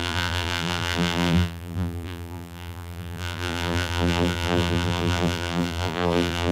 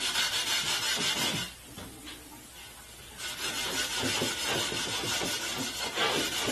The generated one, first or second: first